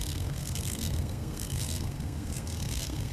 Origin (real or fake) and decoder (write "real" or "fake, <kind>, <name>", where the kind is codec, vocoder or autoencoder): fake, codec, SNAC